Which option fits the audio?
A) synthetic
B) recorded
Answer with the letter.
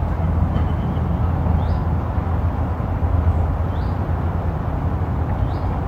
B